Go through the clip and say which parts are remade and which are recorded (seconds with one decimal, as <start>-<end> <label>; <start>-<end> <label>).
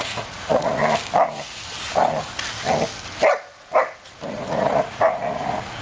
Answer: 0.0-0.8 remade; 0.8-4.3 recorded; 4.3-5.8 remade